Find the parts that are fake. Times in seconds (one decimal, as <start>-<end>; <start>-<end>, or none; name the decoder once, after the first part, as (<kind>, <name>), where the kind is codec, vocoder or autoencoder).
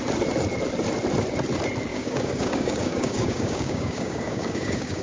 1.9-5.0 (codec, DAC)